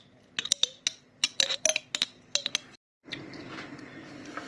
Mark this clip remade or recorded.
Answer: recorded